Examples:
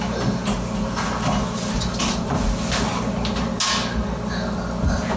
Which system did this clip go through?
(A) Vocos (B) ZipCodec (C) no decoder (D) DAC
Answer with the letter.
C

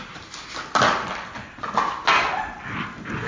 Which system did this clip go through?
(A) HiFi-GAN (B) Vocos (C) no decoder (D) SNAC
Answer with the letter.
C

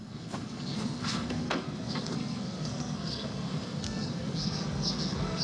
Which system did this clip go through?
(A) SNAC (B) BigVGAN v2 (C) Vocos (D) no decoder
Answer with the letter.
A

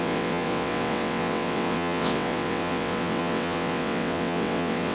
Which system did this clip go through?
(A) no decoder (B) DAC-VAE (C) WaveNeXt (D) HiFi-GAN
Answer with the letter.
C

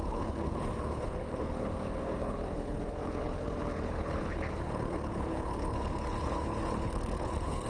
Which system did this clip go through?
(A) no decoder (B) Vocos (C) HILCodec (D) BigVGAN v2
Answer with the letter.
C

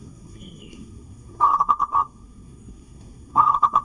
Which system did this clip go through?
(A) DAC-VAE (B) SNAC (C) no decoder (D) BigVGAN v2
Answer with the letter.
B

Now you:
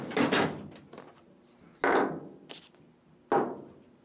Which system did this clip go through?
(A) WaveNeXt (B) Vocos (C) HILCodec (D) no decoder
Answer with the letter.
D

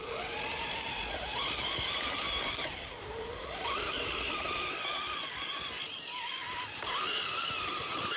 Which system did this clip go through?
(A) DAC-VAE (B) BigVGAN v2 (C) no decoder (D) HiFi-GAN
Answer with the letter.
C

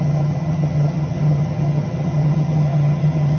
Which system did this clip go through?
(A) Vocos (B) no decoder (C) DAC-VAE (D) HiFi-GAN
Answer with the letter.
D